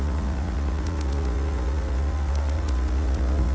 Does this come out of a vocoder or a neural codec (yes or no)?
yes